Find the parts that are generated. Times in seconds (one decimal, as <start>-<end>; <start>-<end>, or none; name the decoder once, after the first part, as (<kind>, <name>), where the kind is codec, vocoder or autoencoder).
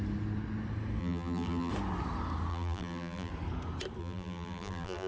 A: 1.0-1.7 (vocoder, BigVGAN v2); 2.5-3.3; 4.0-5.1